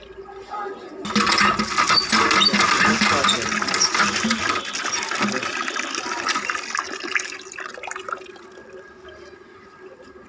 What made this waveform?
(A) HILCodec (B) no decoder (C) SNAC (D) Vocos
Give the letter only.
B